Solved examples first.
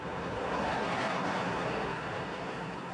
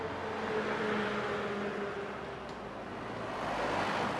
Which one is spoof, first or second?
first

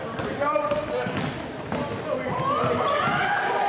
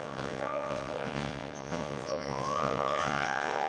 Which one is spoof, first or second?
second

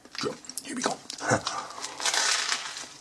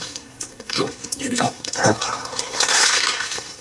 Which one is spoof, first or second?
second